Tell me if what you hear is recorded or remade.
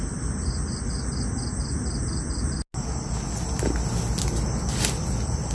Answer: recorded